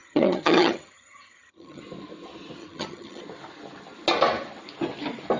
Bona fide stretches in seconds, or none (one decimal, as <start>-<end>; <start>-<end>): 1.8-2.6; 3.2-5.4